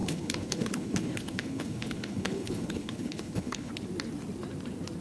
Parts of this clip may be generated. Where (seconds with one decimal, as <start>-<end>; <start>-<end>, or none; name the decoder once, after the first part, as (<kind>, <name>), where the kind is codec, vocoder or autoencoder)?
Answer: 0.0-3.7 (codec, HILCodec)